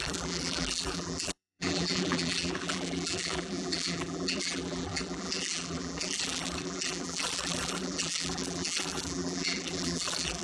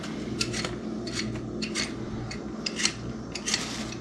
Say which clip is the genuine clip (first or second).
second